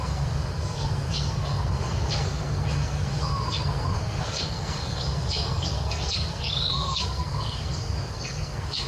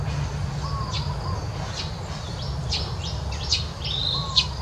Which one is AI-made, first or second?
first